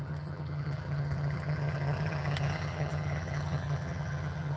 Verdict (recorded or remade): remade